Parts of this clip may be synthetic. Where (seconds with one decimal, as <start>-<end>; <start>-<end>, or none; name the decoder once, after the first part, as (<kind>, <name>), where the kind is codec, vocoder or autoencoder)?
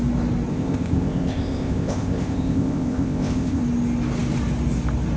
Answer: 0.5-3.6 (codec, ZipCodec)